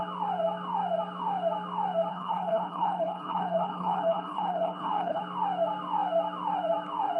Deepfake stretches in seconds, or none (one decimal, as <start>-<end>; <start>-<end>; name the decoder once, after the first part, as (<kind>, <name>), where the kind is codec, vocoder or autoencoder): 2.1-5.2 (codec, HILCodec)